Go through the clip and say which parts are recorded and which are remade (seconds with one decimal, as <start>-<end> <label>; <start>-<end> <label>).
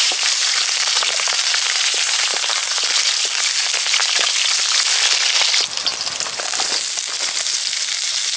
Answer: 0.0-2.6 remade; 2.6-3.2 recorded; 3.2-3.6 remade; 3.6-7.9 recorded; 7.9-8.4 remade